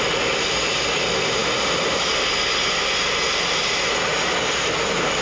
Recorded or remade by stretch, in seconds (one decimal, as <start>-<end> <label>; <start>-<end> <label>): 0.0-5.2 recorded